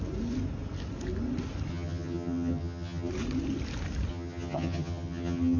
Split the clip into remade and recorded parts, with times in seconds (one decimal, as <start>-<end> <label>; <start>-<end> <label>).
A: 0.0-1.7 recorded; 1.7-3.1 remade; 3.1-4.1 recorded; 4.1-5.6 remade